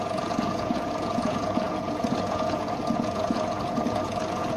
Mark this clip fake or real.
fake